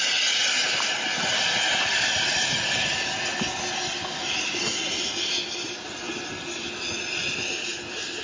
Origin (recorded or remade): recorded